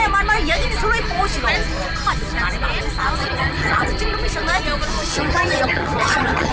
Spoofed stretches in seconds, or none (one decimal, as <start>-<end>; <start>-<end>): 3.2-3.9; 5.1-6.5